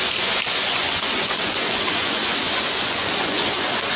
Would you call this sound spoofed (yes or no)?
yes